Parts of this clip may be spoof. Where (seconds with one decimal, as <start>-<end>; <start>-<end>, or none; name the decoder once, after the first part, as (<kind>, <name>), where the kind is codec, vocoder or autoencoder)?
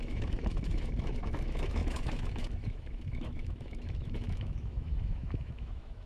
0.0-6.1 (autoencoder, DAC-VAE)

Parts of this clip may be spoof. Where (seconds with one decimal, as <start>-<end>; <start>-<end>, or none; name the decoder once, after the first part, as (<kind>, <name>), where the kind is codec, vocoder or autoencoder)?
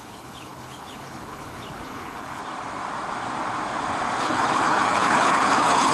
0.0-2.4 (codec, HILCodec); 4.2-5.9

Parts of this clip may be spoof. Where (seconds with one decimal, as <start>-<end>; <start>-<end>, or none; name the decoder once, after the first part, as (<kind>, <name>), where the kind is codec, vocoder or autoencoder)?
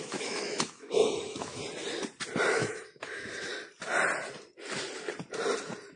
0.0-1.6 (autoencoder, DAC-VAE); 2.5-3.5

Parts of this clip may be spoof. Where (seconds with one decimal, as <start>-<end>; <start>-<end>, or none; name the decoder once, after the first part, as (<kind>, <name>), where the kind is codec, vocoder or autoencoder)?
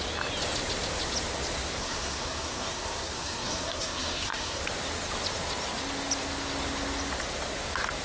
1.8-4.6 (codec, SNAC)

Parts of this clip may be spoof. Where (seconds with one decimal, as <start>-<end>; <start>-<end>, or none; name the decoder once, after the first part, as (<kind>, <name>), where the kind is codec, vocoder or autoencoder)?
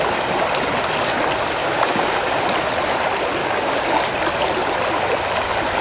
1.6-2.4 (codec, DAC); 3.4-4.1